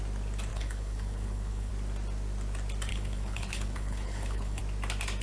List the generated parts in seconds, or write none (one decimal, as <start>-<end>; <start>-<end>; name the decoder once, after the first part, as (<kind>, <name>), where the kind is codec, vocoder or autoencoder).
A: 0.5-1.7 (codec, HILCodec); 2.9-4.6